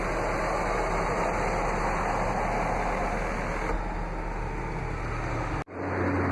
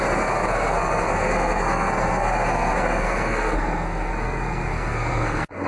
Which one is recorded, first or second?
first